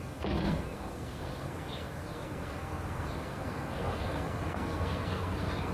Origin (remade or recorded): remade